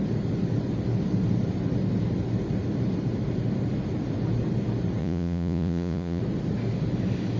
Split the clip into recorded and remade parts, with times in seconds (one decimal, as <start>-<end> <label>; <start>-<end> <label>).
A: 0.0-5.0 recorded; 5.0-6.2 remade; 6.2-7.4 recorded